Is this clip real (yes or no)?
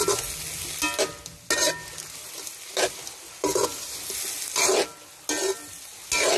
yes